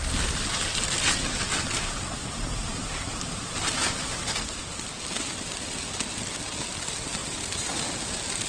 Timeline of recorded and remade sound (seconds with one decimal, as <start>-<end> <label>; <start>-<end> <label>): 0.0-2.7 recorded; 2.7-3.3 remade; 3.3-7.2 recorded; 7.2-7.7 remade; 7.7-8.5 recorded